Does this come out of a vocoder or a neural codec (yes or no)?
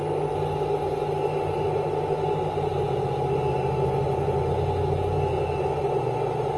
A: no